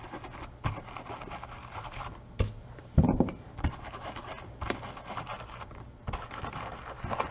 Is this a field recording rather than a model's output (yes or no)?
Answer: yes